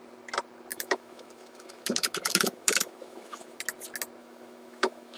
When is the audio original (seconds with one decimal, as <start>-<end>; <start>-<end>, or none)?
0.0-0.7; 3.6-4.2

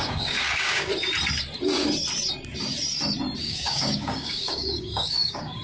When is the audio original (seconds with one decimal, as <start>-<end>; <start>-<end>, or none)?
0.9-3.4

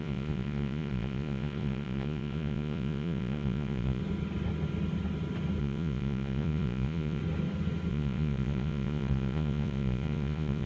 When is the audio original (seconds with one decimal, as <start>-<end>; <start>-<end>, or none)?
4.0-5.6; 7.2-7.9

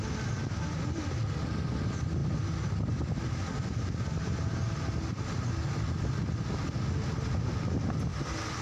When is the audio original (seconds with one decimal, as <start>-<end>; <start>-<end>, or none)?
0.0-8.6

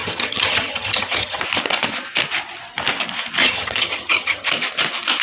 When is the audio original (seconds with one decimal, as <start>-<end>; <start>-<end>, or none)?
1.4-3.4; 4.5-5.2